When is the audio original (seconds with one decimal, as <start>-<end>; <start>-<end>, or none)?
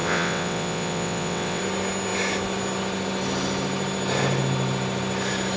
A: 1.6-5.6